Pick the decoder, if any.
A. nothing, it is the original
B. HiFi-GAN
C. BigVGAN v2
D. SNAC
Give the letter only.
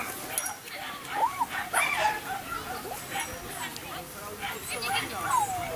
A